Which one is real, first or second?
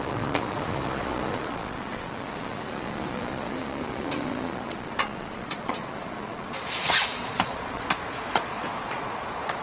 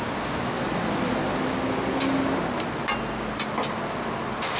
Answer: second